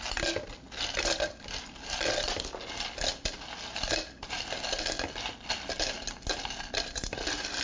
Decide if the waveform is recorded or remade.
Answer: recorded